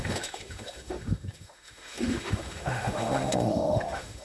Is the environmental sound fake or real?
fake